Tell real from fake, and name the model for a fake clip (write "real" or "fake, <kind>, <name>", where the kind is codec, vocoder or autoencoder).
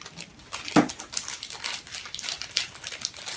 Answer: real